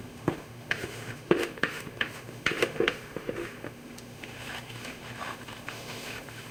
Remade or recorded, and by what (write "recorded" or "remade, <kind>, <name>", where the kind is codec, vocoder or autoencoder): remade, autoencoder, DAC-VAE